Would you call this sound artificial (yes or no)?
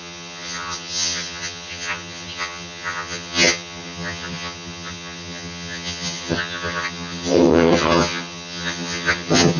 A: yes